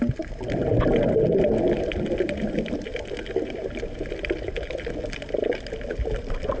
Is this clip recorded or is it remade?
recorded